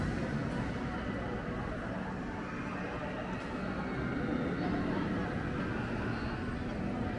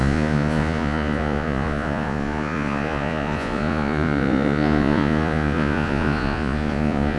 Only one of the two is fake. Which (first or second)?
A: second